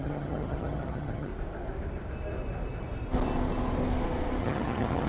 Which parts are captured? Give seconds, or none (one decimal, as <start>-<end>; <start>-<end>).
1.3-4.4

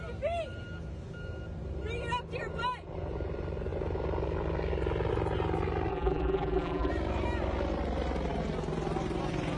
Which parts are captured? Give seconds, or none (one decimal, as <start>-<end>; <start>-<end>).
0.0-5.9; 6.9-9.6

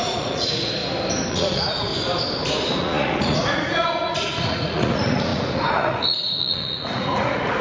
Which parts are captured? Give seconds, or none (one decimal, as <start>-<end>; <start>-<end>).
0.8-1.3; 1.9-2.8

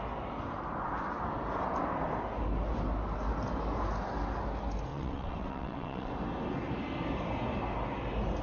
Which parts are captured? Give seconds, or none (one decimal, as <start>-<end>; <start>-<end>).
0.0-4.9; 6.1-8.4

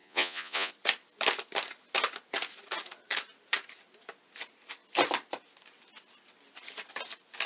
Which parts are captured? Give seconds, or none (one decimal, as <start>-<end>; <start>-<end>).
0.7-7.5

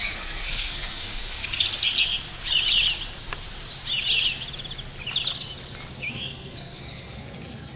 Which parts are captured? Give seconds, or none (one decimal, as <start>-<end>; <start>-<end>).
1.4-6.1